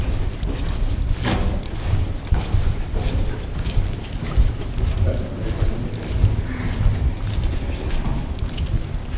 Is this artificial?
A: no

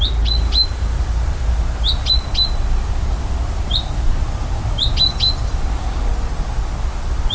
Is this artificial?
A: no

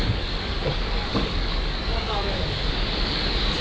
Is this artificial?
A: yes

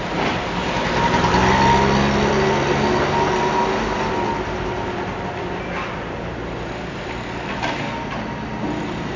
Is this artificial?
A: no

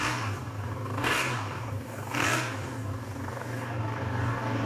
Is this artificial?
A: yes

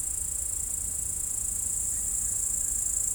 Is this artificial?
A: no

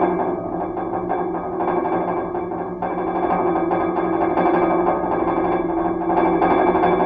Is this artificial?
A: no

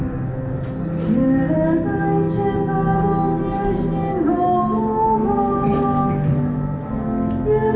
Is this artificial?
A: no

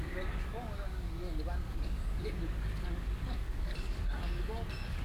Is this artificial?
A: yes